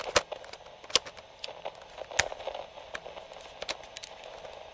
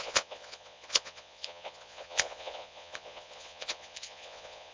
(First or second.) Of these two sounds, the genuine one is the first